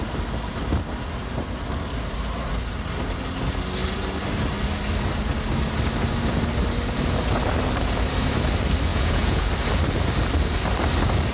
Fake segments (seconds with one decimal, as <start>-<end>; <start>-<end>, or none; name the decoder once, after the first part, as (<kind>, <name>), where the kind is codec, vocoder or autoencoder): 8.9-9.5 (vocoder, Vocos)